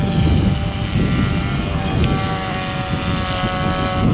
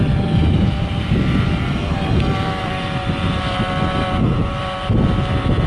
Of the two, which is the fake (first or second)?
second